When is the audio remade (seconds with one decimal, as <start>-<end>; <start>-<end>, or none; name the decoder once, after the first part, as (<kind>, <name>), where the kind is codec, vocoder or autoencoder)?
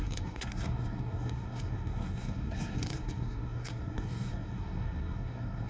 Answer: 0.0-5.7 (codec, SNAC)